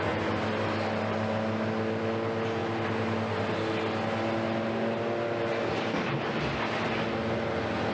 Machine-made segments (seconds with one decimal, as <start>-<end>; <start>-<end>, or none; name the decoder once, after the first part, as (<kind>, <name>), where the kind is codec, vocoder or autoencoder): none